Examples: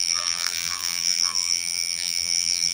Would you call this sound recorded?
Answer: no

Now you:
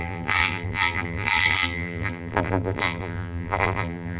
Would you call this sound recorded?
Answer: no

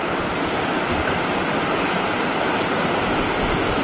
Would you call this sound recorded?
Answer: yes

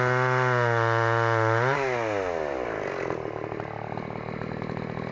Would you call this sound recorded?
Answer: yes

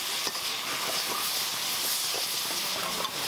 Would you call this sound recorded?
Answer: yes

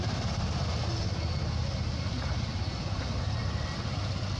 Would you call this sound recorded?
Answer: yes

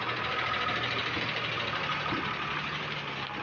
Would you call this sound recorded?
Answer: yes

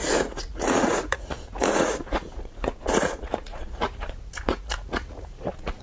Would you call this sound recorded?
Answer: no